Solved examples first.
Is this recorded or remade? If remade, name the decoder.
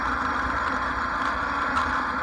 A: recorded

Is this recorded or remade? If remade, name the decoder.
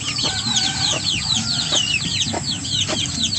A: remade, vocoder, BigVGAN v2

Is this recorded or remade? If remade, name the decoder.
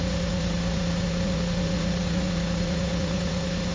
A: remade, vocoder, Vocos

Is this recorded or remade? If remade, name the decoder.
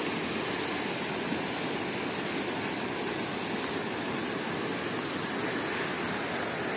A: recorded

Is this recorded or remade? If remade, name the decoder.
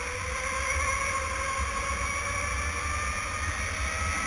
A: recorded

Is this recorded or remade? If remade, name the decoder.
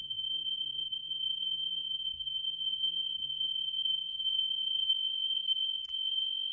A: remade, codec, SNAC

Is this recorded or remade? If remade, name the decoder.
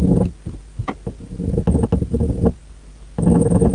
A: recorded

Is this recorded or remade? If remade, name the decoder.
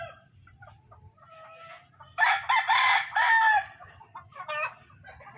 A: recorded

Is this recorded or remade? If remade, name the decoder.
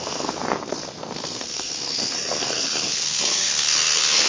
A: remade, codec, SNAC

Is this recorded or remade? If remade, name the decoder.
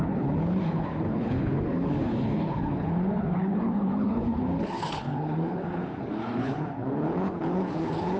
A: remade, codec, HILCodec